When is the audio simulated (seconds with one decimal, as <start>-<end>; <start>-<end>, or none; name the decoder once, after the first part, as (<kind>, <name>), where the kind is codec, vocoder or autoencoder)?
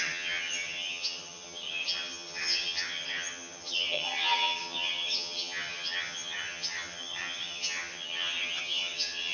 0.0-9.3 (vocoder, HiFi-GAN)